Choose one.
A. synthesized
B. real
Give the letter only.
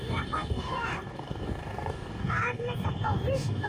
A